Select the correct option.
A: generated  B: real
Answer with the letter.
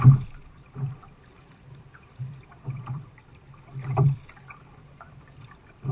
A